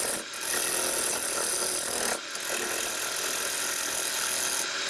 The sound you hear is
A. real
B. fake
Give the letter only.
A